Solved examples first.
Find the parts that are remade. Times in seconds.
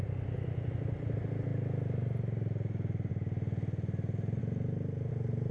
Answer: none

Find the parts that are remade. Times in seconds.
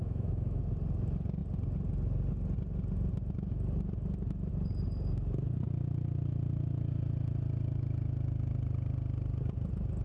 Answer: 0.0-0.6 (autoencoder, DAC-VAE)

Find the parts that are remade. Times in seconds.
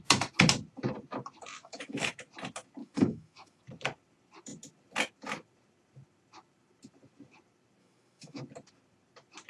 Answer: 1.6-2.1 (autoencoder, DAC-VAE); 2.8-3.6; 7.8-8.4